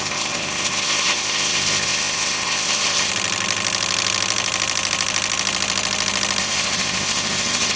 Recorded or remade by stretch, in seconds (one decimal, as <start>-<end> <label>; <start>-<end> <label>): 0.0-3.1 remade; 3.1-6.4 recorded; 6.4-7.8 remade